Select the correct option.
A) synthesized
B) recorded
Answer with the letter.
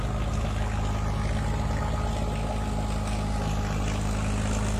B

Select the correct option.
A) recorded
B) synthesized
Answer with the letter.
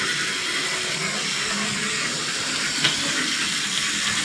A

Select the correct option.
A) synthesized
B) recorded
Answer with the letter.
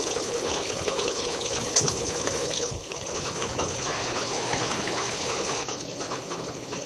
A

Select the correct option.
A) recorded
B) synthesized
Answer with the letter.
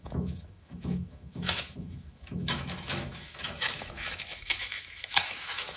B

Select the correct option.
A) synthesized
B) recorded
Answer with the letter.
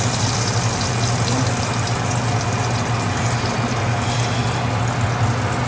B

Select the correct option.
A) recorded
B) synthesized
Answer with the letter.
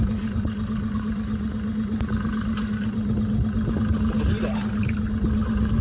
A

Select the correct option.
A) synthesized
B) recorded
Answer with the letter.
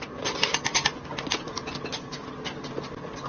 B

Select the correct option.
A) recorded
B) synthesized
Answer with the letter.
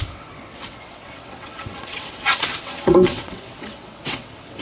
B